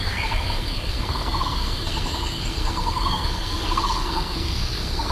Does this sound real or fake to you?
fake